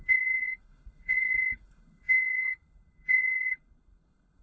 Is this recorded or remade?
remade